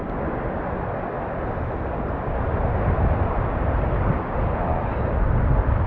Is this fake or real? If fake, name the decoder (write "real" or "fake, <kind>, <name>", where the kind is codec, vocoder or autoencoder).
real